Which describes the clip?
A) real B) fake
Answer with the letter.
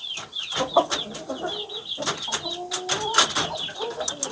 A